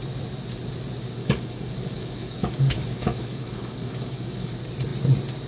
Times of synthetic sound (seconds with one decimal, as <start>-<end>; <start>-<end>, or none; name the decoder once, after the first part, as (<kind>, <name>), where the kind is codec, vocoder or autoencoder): 1.2-4.5 (codec, DAC)